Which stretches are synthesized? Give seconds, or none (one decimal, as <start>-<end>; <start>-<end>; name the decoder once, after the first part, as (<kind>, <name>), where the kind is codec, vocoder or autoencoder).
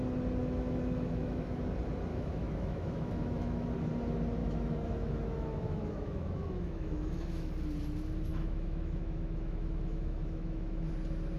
0.4-1.6 (autoencoder, DAC-VAE); 2.1-3.7; 4.4-7.5; 8.3-10.9